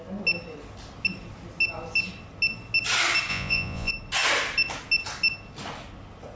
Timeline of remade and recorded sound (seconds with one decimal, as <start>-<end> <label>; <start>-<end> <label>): 0.0-3.3 recorded; 3.3-3.9 remade; 3.9-6.4 recorded